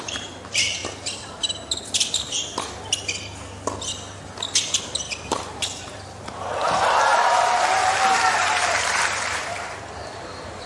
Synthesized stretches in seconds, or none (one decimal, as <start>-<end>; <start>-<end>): 0.0-0.8; 4.8-10.7